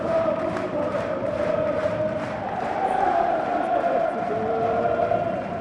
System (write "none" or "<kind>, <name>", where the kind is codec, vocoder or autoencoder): vocoder, BigVGAN v2